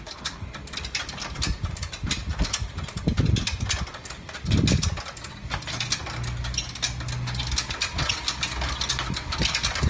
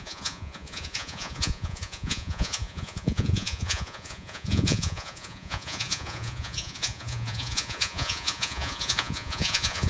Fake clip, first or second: second